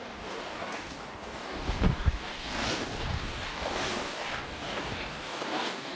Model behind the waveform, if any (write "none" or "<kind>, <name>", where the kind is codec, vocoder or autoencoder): codec, DAC